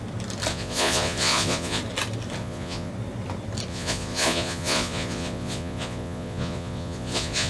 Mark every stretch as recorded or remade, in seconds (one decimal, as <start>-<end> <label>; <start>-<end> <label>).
0.0-0.5 recorded; 0.5-1.8 remade; 1.8-2.4 recorded; 2.4-2.9 remade; 2.9-3.7 recorded; 3.7-7.5 remade